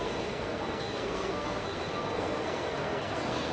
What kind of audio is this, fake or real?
fake